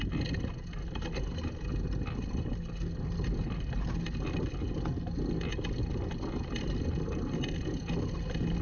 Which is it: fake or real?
real